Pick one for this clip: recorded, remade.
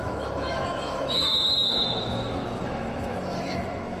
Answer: remade